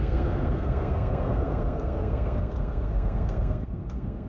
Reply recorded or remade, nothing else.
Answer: remade